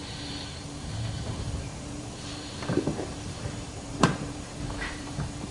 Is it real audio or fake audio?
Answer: fake